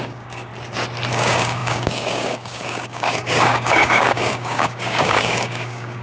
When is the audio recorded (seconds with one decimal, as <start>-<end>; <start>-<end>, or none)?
0.5-1.1